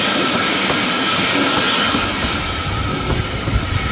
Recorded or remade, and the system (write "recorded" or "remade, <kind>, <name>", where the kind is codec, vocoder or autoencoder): recorded